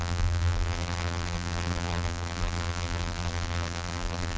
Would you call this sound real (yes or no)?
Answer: no